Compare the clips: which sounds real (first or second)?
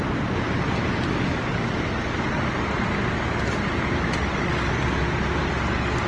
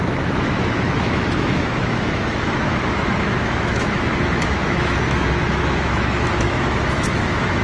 first